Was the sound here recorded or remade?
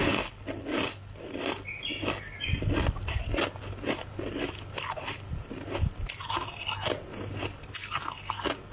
recorded